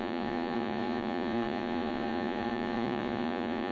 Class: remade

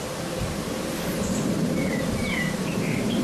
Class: remade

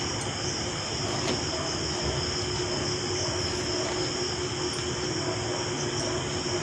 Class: recorded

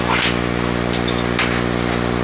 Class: recorded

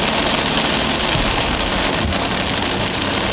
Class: recorded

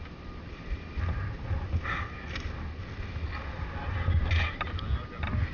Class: recorded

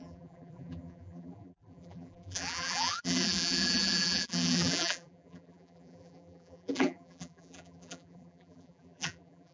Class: remade